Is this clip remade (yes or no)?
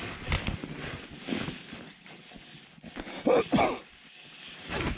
no